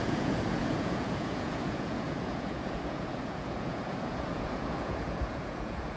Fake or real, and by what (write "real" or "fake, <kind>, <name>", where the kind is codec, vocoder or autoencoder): fake, vocoder, Vocos